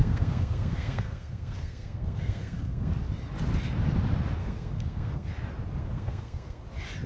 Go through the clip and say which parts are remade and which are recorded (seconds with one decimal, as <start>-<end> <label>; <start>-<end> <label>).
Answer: 0.0-2.9 remade; 2.9-4.4 recorded; 4.4-5.3 remade; 5.3-5.8 recorded; 5.8-6.6 remade; 6.6-7.1 recorded